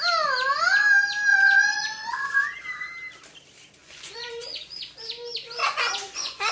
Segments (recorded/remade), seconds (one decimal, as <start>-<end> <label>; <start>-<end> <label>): 0.0-1.3 recorded; 1.3-2.4 remade; 2.4-3.8 recorded; 3.8-4.8 remade; 4.8-5.6 recorded; 5.6-6.5 remade